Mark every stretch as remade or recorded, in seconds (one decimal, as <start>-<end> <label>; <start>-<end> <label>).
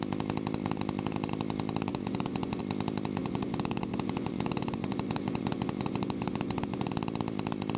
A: 0.0-1.9 recorded; 1.9-2.6 remade; 2.6-3.2 recorded; 3.2-6.9 remade; 6.9-7.8 recorded